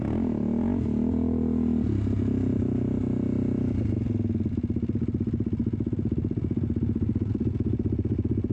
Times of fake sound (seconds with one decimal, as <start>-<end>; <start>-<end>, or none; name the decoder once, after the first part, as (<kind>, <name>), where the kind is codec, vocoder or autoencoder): none